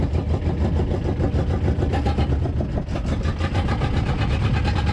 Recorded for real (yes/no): yes